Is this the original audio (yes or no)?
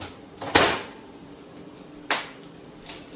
yes